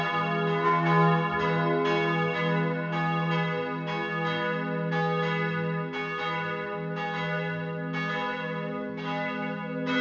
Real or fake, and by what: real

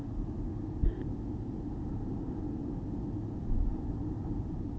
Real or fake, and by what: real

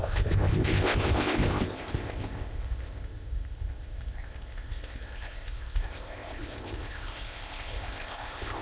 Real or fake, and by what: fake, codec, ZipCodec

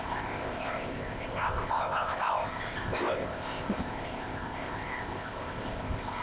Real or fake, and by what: fake, codec, ZipCodec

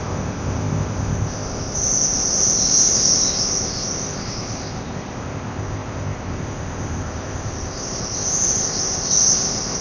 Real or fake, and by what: fake, codec, ZipCodec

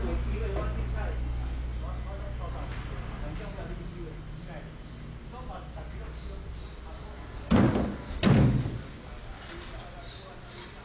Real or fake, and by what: real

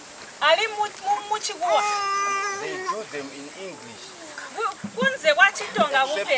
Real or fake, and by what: real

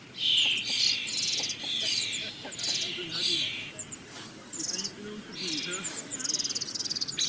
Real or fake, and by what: real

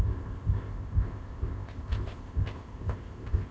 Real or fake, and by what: fake, codec, ZipCodec